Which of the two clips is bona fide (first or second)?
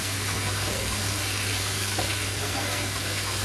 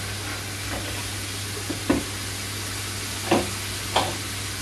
second